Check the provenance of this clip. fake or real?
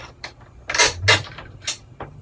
real